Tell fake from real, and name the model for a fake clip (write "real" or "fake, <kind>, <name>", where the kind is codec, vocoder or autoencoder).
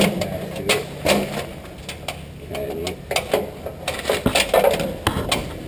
real